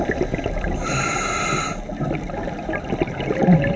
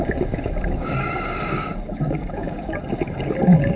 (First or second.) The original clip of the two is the first